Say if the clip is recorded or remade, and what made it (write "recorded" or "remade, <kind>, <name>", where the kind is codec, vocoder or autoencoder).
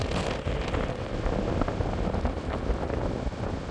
recorded